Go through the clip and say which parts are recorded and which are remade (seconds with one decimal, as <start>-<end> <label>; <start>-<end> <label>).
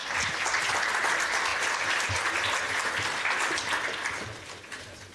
0.0-5.1 recorded